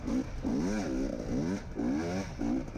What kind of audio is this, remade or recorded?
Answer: recorded